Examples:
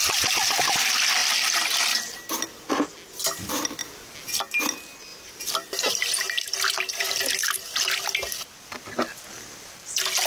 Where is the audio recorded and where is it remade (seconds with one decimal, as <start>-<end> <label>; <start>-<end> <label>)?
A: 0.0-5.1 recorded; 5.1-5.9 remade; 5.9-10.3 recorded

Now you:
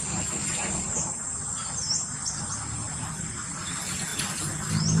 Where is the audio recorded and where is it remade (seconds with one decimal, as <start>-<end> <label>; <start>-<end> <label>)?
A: 0.0-5.0 recorded

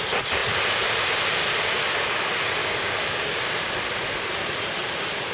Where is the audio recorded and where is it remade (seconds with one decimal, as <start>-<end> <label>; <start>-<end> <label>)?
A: 0.0-2.6 recorded; 2.6-3.7 remade; 3.7-5.3 recorded

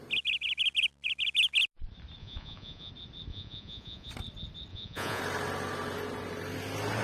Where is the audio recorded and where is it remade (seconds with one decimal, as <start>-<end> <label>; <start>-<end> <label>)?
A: 0.0-2.2 recorded; 2.2-2.9 remade; 2.9-3.3 recorded; 3.3-4.1 remade; 4.1-4.7 recorded; 4.7-5.2 remade; 5.2-7.0 recorded